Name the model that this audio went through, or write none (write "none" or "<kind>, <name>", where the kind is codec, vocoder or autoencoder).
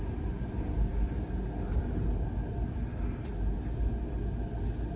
none